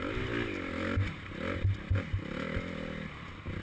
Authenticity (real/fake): real